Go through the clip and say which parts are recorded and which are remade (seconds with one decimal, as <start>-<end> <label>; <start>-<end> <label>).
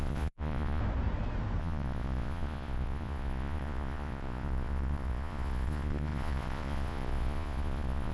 0.0-0.8 remade; 0.8-1.6 recorded; 1.6-8.1 remade